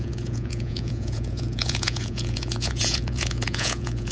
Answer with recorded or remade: remade